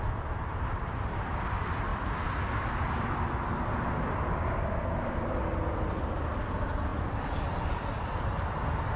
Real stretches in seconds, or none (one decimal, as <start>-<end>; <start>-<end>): 0.0-9.0